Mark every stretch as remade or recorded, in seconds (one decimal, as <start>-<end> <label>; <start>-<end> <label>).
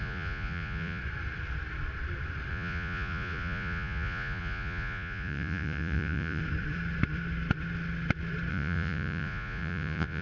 0.0-1.0 remade; 1.0-2.5 recorded; 2.5-6.4 remade; 6.4-8.5 recorded; 8.5-10.2 remade